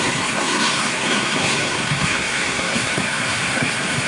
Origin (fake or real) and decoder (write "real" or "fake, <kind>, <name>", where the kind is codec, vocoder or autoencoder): fake, codec, SNAC